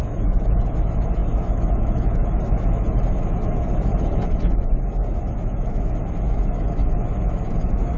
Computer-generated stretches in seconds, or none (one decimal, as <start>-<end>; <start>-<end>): 0.0-8.0